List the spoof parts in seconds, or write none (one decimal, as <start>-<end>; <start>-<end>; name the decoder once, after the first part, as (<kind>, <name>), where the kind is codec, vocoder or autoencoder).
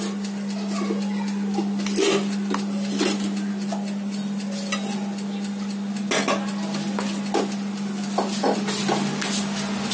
none